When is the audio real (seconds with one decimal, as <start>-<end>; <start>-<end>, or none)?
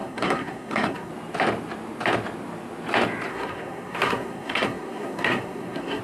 1.1-3.3